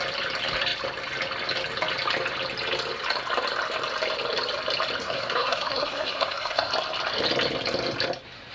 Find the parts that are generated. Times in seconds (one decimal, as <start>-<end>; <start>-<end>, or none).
5.0-6.7